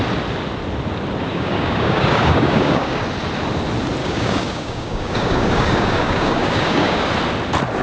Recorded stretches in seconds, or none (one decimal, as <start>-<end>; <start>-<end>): 0.0-1.3; 3.0-4.0; 7.1-7.8

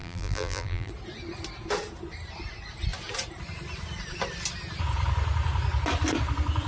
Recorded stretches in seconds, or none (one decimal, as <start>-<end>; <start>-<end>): 0.9-6.7

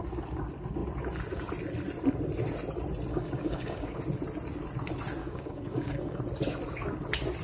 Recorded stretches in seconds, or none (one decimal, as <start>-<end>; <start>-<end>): 0.0-3.1; 4.0-5.2; 6.2-7.4

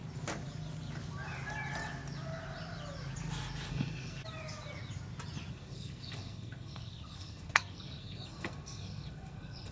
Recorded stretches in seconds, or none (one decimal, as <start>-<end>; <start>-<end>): 0.0-3.7; 4.2-5.5

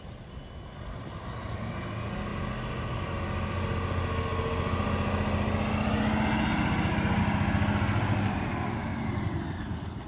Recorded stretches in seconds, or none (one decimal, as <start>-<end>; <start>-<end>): 0.0-8.9